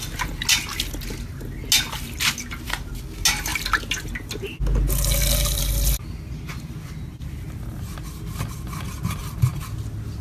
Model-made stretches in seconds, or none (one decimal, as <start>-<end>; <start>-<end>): none